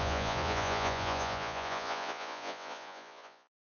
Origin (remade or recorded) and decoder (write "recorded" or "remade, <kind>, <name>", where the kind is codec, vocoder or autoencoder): remade, vocoder, Vocos